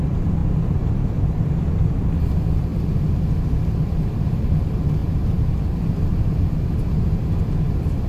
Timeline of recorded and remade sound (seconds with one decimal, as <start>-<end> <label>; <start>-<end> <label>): 0.0-5.0 remade; 5.0-7.4 recorded; 7.4-8.1 remade